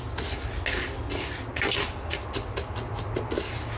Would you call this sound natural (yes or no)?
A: yes